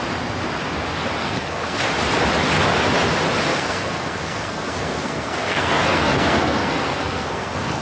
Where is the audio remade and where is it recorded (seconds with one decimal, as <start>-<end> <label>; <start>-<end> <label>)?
0.0-1.2 recorded; 1.2-1.8 remade; 1.8-3.5 recorded; 3.5-7.8 remade